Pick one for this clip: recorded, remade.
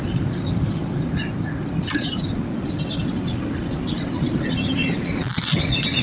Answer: recorded